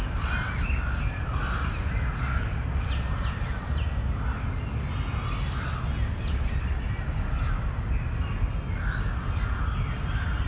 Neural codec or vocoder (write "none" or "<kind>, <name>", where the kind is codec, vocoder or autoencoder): none